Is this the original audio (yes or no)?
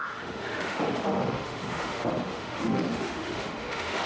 no